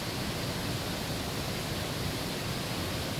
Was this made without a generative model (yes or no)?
yes